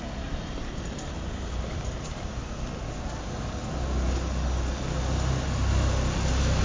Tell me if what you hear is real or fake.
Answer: real